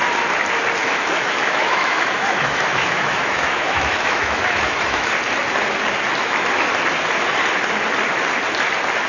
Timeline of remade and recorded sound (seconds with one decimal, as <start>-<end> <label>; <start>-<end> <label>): 0.0-0.8 recorded; 0.8-5.1 remade; 5.1-6.2 recorded; 6.2-6.7 remade; 6.7-9.1 recorded